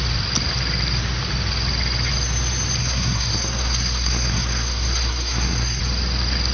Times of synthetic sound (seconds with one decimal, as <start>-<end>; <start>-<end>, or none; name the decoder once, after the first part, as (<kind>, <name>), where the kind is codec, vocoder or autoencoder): 2.8-5.8 (codec, SNAC)